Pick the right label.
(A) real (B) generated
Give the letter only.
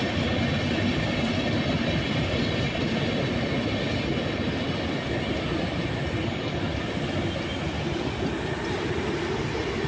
A